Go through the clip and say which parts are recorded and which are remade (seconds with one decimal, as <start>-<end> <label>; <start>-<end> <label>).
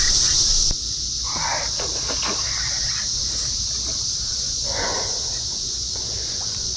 0.0-4.3 recorded; 4.3-6.8 remade